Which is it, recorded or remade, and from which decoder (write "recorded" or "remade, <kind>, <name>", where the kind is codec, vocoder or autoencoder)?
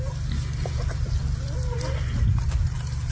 recorded